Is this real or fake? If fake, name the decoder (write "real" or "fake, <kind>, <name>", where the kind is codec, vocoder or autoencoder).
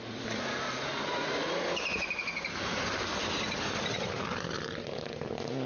real